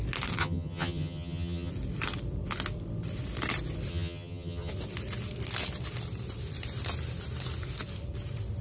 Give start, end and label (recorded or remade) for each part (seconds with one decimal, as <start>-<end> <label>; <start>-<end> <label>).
0.0-0.4 recorded; 0.4-1.7 remade; 1.7-3.9 recorded; 3.9-4.7 remade; 4.7-8.6 recorded